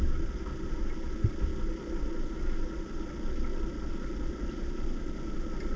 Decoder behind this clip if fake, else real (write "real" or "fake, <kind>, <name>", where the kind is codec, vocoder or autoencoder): real